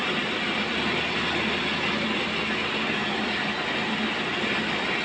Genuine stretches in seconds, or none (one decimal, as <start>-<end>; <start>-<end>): 0.0-5.0